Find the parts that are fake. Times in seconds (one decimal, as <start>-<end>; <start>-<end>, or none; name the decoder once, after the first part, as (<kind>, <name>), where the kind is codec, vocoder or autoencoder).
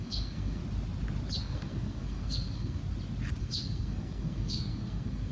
0.0-0.6 (codec, SNAC); 1.4-2.8; 3.4-5.3